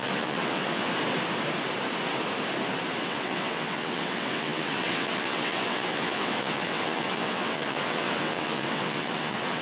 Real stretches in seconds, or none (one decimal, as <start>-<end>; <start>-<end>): 0.9-3.0